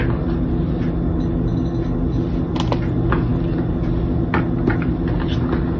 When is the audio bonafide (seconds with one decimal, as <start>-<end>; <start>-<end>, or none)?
0.0-5.8